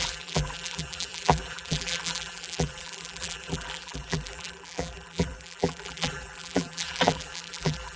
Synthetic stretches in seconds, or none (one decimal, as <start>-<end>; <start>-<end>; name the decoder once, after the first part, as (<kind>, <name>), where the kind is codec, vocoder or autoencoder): 0.0-8.0 (vocoder, BigVGAN v2)